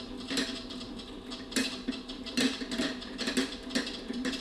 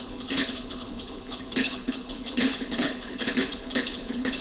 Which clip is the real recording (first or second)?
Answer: first